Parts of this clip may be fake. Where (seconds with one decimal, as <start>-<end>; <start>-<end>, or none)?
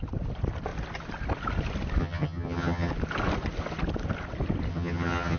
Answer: 2.0-2.9; 4.7-5.4